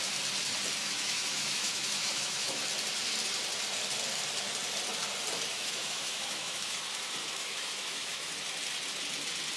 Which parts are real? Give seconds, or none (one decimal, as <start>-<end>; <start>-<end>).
0.0-0.8; 2.6-5.5; 6.8-7.2; 8.3-9.6